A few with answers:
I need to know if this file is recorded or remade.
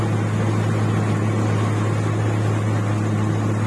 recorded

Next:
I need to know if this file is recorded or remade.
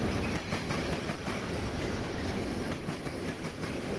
recorded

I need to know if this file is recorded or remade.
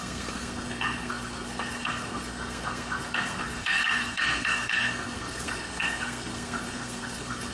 remade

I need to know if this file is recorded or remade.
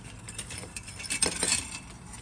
recorded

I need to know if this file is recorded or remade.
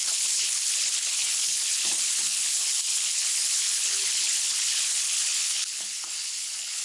remade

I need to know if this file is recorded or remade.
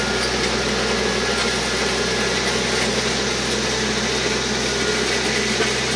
recorded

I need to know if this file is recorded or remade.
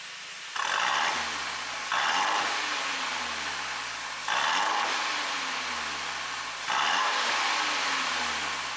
recorded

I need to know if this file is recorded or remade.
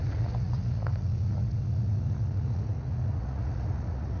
remade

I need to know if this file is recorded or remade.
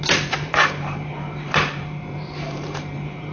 remade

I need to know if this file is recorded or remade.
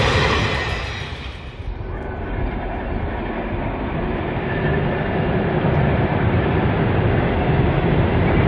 recorded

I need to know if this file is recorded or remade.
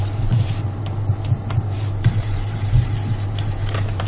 remade